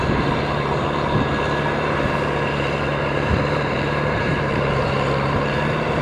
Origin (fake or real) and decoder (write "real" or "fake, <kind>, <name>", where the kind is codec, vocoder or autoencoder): fake, vocoder, BigVGAN v2